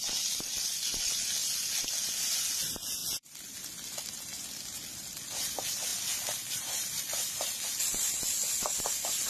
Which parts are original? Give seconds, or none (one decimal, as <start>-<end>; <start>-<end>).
1.4-2.1